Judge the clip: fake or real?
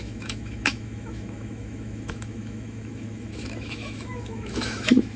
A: fake